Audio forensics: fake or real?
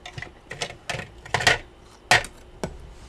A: real